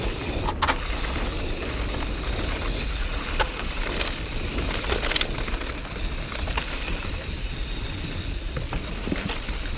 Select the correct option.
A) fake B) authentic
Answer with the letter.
B